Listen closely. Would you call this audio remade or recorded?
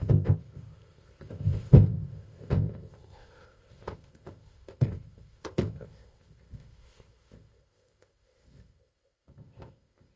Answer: remade